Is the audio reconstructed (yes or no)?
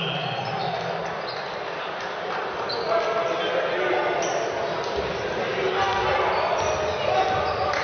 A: no